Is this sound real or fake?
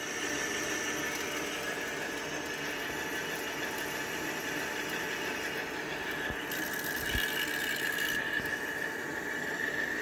real